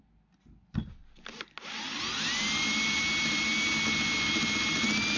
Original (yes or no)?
yes